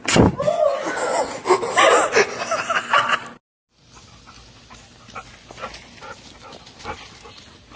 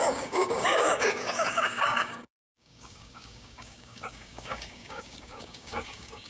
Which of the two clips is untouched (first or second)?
first